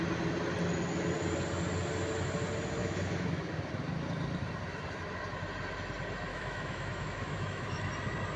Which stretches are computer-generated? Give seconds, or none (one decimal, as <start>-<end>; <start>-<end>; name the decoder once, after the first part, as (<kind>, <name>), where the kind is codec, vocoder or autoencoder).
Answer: 2.8-3.4 (autoencoder, DAC-VAE); 6.3-7.9

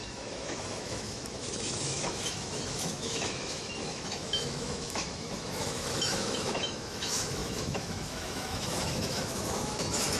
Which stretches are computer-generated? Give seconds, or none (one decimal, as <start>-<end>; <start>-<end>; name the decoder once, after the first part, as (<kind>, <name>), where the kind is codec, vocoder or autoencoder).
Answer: 0.0-10.2 (autoencoder, DAC-VAE)

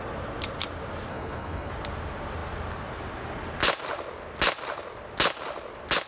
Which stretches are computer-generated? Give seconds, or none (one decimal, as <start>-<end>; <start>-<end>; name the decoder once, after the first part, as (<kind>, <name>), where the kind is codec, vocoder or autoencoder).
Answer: 1.1-1.7 (codec, HILCodec)

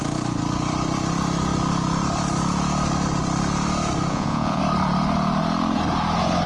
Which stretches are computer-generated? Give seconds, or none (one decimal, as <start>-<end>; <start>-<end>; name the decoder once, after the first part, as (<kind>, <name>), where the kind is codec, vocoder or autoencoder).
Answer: 4.1-4.6 (vocoder, Vocos)

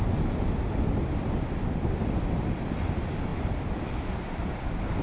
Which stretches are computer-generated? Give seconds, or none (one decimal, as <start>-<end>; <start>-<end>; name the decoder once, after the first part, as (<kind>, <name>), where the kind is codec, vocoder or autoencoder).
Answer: none

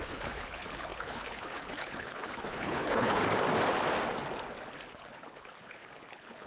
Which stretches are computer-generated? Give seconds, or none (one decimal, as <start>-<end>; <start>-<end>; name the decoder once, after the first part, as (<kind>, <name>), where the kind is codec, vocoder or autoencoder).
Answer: 0.0-3.2 (codec, HILCodec); 4.9-6.5

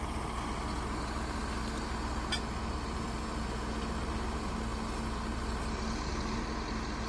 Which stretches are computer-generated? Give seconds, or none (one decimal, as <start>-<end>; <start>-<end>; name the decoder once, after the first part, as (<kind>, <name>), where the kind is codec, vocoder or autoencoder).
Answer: none

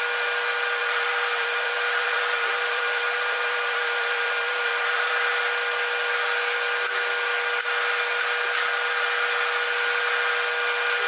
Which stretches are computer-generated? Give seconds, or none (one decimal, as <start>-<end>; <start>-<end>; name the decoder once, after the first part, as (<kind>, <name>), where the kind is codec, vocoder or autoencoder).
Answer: 0.8-5.1 (vocoder, BigVGAN v2)